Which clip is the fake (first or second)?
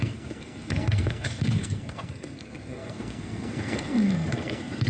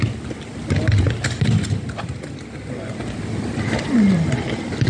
first